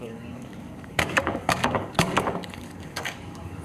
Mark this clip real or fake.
fake